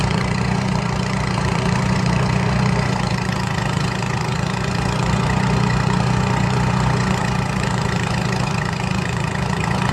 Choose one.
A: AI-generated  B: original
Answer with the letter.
A